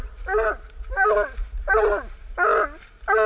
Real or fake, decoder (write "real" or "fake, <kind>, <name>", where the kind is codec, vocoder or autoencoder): real